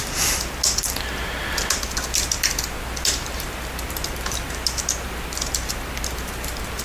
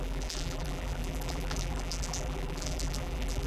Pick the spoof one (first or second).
second